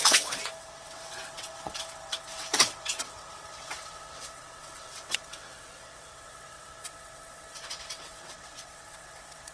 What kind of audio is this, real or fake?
fake